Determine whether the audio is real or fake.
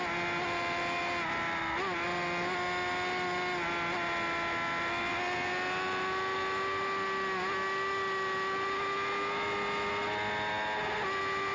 real